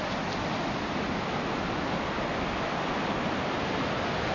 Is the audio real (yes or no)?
yes